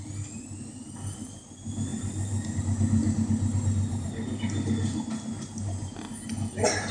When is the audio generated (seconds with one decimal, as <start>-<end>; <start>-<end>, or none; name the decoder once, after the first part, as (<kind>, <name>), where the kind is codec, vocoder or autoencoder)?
none